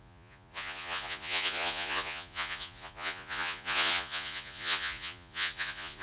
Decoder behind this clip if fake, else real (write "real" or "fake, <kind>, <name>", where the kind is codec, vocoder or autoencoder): fake, vocoder, Vocos